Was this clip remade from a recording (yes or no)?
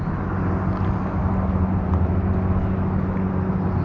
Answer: no